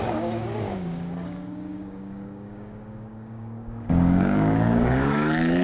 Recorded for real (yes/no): no